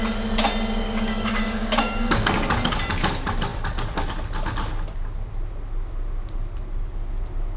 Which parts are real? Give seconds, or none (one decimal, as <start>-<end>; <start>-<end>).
0.0-0.8; 2.5-7.6